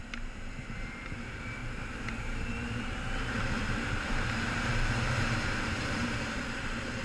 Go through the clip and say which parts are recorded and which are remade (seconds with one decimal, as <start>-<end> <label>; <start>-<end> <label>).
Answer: 0.0-1.6 remade; 1.6-2.2 recorded; 2.2-7.0 remade